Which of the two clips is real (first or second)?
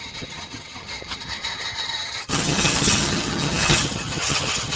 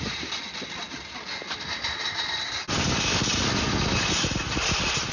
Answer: second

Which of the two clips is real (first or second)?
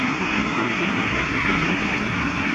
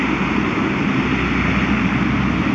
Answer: second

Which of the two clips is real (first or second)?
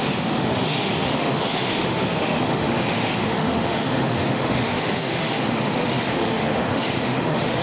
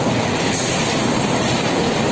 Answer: second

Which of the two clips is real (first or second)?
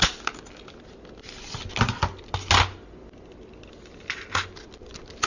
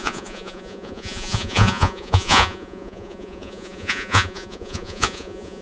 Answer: first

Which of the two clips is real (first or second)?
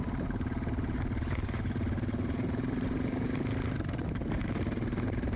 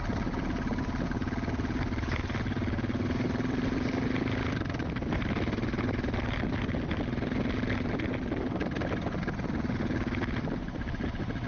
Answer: second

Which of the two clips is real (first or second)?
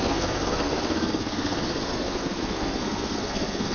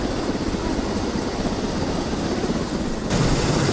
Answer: second